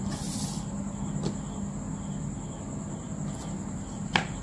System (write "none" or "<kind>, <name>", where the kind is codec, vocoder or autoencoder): none